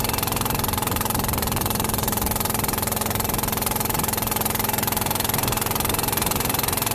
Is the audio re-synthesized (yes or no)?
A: no